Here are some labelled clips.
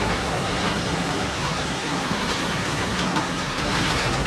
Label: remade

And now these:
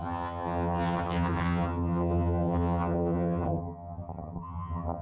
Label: remade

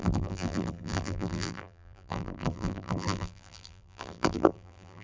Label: remade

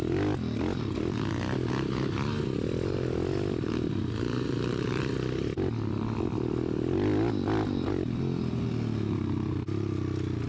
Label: recorded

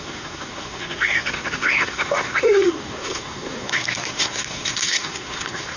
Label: remade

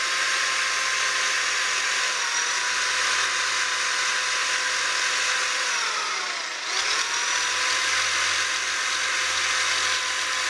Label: recorded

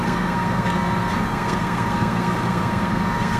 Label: remade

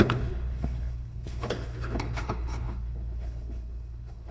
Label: remade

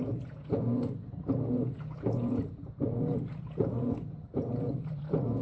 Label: remade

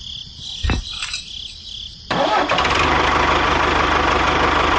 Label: recorded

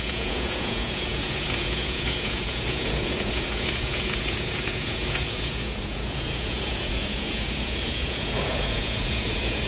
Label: remade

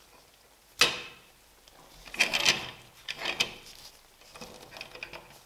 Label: recorded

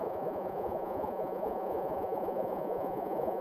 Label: remade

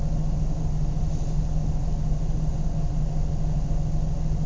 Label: recorded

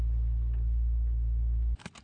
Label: recorded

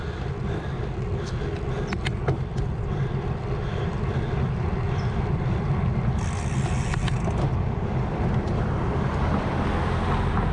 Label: recorded